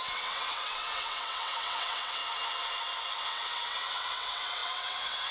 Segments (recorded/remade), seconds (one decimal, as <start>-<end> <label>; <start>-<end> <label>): 0.0-2.2 remade; 2.2-3.2 recorded; 3.2-5.3 remade